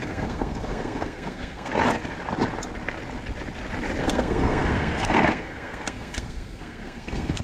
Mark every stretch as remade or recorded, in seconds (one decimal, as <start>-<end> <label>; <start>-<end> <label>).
0.0-1.7 remade; 1.7-4.0 recorded; 4.0-7.4 remade